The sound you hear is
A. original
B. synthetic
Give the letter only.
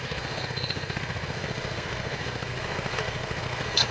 B